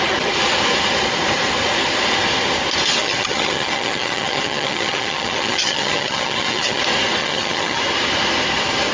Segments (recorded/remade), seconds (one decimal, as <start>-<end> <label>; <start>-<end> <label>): 0.0-3.0 recorded; 3.0-6.8 remade; 6.8-7.2 recorded; 7.2-7.8 remade; 7.8-8.9 recorded